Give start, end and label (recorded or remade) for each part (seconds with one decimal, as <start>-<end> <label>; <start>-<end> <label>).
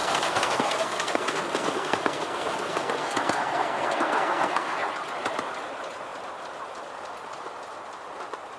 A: 0.0-4.9 remade; 4.9-8.6 recorded